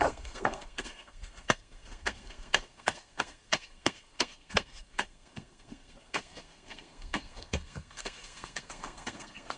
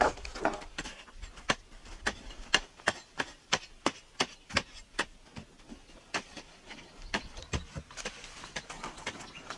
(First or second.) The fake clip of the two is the first